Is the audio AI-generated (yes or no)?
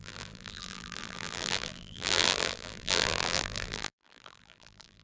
yes